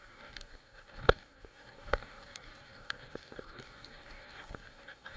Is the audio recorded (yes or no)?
no